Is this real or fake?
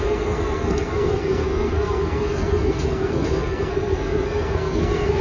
fake